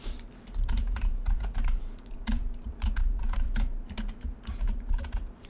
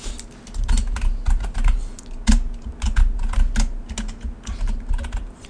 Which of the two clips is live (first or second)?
second